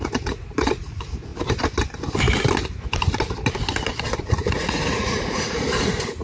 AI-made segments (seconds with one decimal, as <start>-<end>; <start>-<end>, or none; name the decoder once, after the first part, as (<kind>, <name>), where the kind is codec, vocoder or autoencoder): 0.0-1.3 (vocoder, Vocos); 4.2-6.2